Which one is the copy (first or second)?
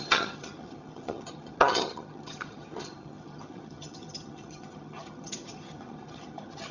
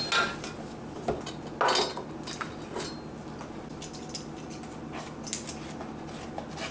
first